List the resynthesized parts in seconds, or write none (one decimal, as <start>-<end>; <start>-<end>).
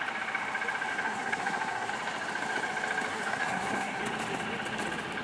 0.9-1.9; 3.1-4.0